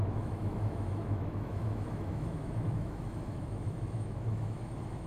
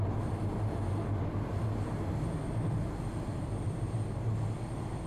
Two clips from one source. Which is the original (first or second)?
second